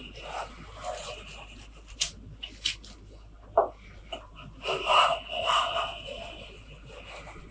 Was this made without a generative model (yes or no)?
yes